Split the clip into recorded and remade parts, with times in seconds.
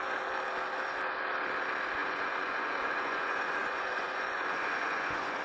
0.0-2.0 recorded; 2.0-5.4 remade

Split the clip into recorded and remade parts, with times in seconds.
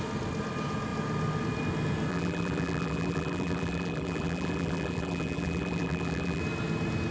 0.0-2.1 recorded; 2.1-6.4 remade; 6.4-7.1 recorded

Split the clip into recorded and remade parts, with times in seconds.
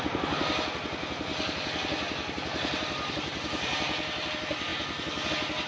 0.0-1.3 recorded; 1.3-4.3 remade; 4.3-5.7 recorded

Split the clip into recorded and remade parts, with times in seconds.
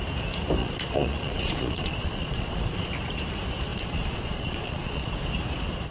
0.0-0.6 recorded; 0.6-2.9 remade; 2.9-3.7 recorded; 3.7-5.3 remade; 5.3-5.9 recorded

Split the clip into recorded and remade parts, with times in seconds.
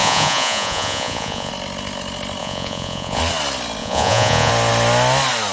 0.0-1.5 remade; 1.5-2.4 recorded; 2.4-3.2 remade; 3.2-3.8 recorded; 3.8-4.5 remade; 4.5-5.5 recorded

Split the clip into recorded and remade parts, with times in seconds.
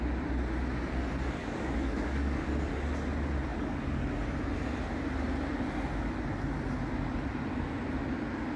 0.0-1.4 recorded; 1.4-2.5 remade; 2.5-3.5 recorded; 3.5-4.1 remade; 4.1-8.6 recorded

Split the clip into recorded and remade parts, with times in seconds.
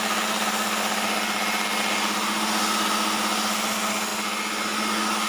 0.0-5.3 recorded